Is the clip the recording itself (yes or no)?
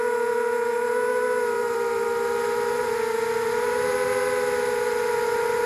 no